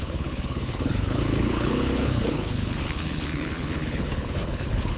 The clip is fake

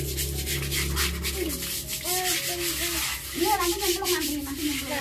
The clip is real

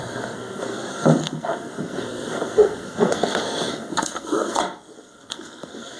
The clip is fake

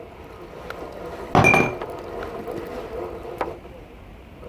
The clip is real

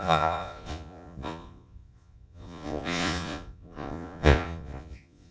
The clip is fake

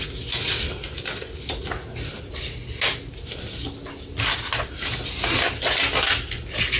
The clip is real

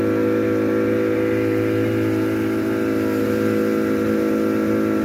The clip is real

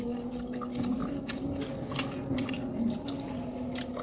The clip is real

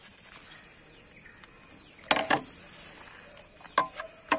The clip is real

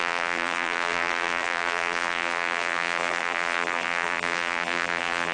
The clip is fake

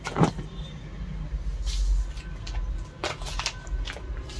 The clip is real